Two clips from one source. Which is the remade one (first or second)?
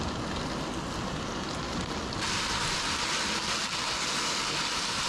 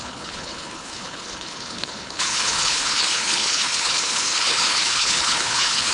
second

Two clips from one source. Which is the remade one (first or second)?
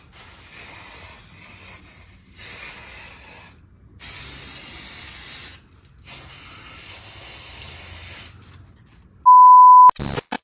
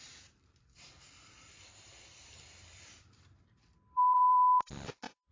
second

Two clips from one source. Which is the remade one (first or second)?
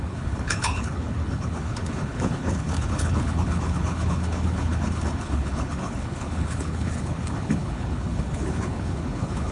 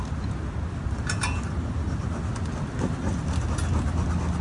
first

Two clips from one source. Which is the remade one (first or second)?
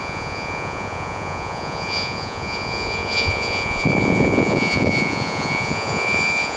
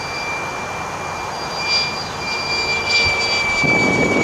first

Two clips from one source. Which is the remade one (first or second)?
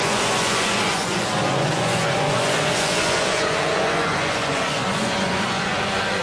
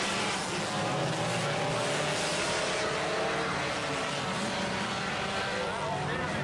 first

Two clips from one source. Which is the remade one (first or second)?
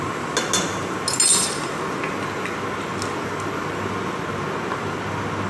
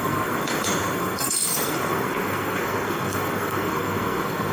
second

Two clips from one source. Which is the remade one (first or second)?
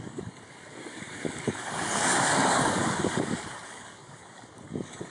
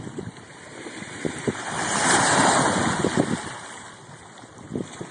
first